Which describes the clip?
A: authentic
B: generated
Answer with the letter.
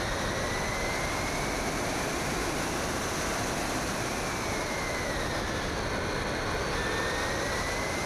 A